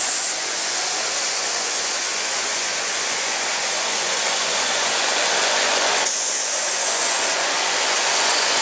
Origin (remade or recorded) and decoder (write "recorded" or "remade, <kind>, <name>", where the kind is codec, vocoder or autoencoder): remade, vocoder, Vocos